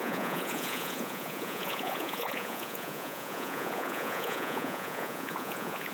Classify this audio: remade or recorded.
remade